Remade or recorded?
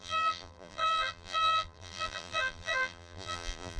remade